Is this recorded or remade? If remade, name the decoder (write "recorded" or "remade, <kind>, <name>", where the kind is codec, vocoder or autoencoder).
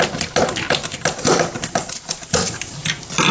recorded